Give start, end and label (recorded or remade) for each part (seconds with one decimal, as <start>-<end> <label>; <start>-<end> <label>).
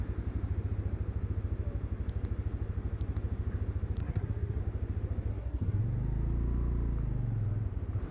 0.0-4.0 recorded; 4.0-4.6 remade; 4.6-5.3 recorded; 5.3-5.8 remade; 5.8-8.1 recorded